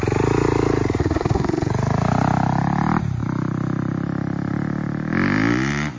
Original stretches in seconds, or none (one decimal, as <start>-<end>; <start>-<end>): 0.0-1.0; 1.7-6.0